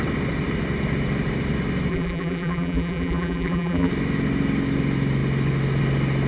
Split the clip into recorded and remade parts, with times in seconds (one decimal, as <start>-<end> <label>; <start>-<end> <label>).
0.0-1.9 recorded; 1.9-3.9 remade; 3.9-6.3 recorded